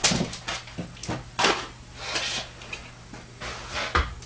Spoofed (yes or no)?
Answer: no